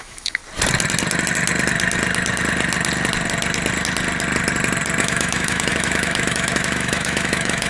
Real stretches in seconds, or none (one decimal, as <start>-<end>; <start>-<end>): 0.4-5.0